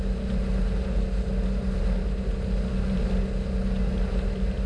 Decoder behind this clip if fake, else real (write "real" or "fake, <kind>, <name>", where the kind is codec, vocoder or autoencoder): real